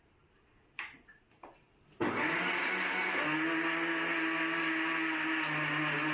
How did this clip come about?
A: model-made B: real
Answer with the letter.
B